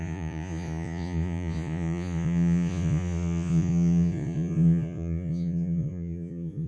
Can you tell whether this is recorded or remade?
remade